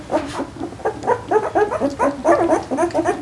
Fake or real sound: real